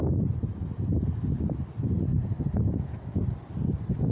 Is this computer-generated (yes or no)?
no